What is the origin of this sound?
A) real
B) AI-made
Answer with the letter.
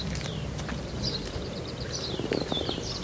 A